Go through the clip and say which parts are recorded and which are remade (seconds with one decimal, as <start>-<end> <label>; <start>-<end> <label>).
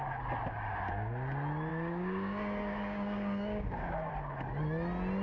0.0-1.7 recorded; 1.7-4.1 remade; 4.1-5.2 recorded